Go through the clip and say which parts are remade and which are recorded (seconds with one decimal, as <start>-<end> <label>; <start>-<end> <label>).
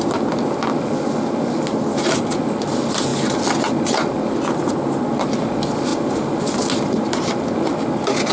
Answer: 0.0-8.3 recorded